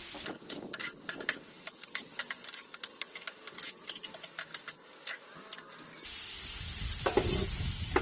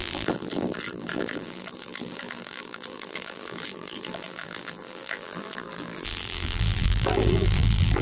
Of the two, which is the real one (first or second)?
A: first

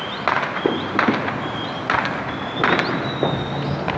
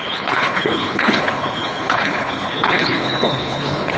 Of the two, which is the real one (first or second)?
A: first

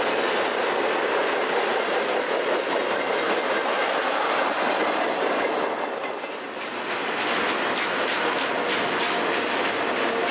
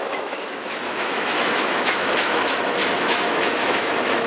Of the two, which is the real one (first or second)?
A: first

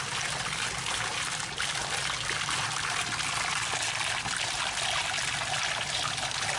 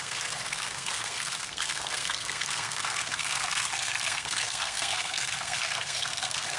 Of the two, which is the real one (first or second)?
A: first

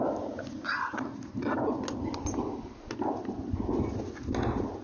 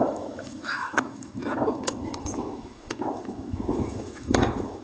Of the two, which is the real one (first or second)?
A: first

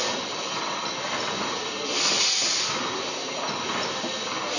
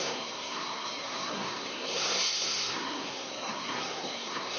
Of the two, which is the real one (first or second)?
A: first